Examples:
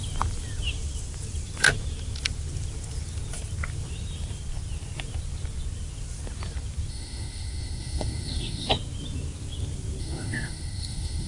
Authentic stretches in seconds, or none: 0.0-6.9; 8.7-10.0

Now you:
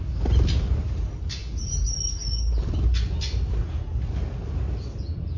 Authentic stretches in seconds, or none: 0.0-5.4

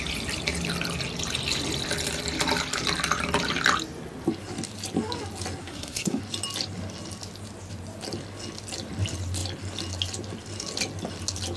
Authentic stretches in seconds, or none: 0.0-5.6; 6.2-11.6

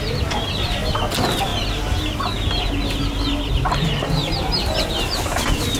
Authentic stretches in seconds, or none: 0.0-5.8